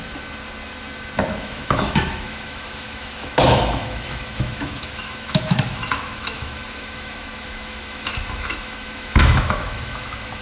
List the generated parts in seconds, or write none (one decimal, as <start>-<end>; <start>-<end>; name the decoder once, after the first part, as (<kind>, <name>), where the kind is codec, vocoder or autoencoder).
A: 1.4-10.4 (autoencoder, DAC-VAE)